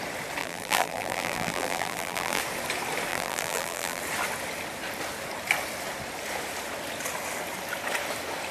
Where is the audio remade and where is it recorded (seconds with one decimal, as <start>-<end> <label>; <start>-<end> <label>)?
0.0-0.4 recorded; 0.4-2.4 remade; 2.4-3.1 recorded; 3.1-4.0 remade; 4.0-8.5 recorded

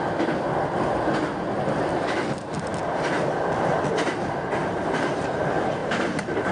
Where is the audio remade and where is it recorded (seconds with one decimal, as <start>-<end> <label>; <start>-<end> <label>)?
0.0-5.8 recorded; 5.8-6.5 remade

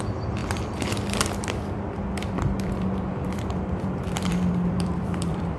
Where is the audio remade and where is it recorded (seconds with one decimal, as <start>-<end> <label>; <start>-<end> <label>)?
0.0-5.6 remade

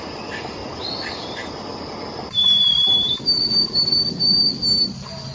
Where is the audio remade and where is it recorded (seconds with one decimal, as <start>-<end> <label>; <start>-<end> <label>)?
0.0-5.3 recorded